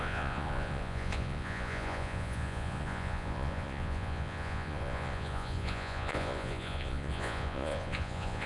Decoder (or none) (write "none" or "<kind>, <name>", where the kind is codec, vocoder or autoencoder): vocoder, Vocos